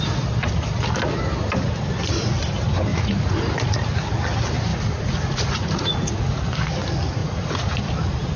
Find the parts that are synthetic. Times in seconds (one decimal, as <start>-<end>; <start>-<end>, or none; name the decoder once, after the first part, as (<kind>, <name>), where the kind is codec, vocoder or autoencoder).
2.9-3.4 (vocoder, Vocos); 4.7-6.4; 7.2-7.8